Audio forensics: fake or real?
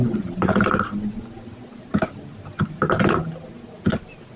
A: real